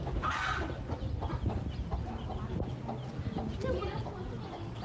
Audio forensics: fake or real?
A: real